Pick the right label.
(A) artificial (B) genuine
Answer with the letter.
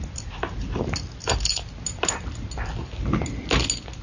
B